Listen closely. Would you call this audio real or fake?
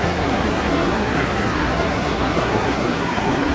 fake